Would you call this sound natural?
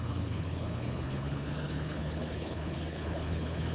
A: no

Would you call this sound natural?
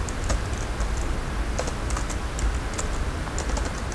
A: yes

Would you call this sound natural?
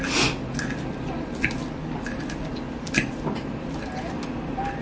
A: yes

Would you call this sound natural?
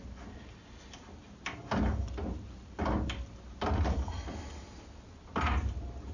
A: yes